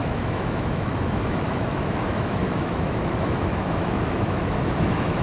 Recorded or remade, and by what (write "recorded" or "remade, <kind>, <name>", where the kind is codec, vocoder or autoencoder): remade, autoencoder, DAC-VAE